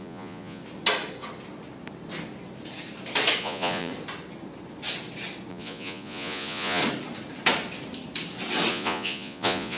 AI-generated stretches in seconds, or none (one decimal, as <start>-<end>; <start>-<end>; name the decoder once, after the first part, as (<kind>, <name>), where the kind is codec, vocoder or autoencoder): 0.0-0.6 (vocoder, Vocos); 3.4-3.9; 5.5-6.8; 8.7-9.8